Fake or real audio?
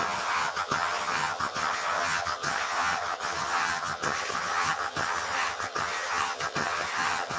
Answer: fake